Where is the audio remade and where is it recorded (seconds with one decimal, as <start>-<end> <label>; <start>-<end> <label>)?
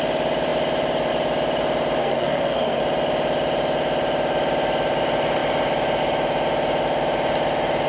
0.0-2.0 recorded; 2.0-2.8 remade; 2.8-7.9 recorded